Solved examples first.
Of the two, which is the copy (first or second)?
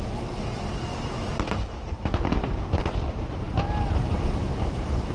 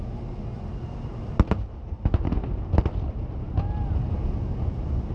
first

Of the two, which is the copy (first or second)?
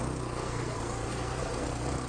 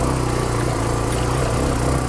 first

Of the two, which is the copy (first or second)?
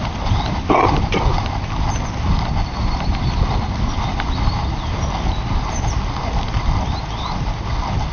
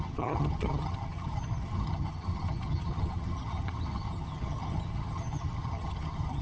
second